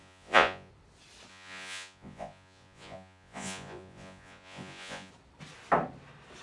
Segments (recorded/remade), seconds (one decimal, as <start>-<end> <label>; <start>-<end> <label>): 0.0-0.7 remade; 0.7-1.3 recorded; 1.3-5.1 remade; 5.1-6.4 recorded